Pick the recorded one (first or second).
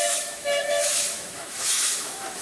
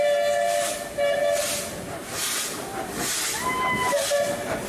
second